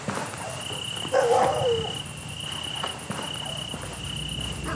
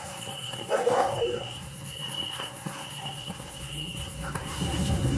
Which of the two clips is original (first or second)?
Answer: first